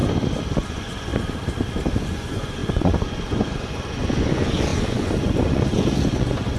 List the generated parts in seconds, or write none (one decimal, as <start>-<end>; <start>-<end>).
0.7-1.1; 2.0-6.6